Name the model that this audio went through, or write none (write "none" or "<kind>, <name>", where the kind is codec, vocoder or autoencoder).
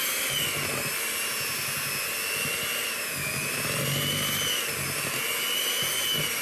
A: none